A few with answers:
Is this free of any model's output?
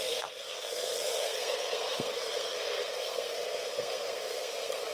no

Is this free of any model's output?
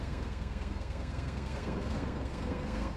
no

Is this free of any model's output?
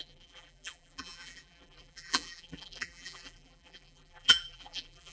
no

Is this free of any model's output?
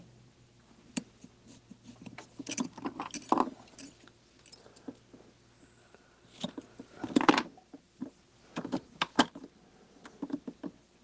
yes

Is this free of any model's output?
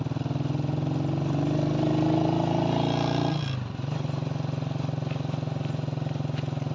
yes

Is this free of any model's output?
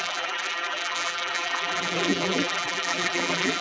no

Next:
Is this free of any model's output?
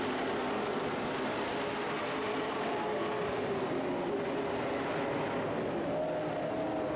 yes